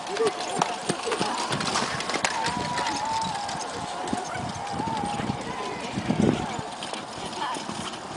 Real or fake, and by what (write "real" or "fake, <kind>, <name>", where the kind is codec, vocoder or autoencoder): real